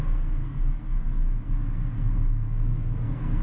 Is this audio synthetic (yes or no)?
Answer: yes